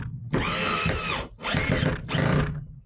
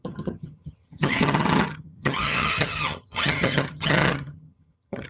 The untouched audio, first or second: first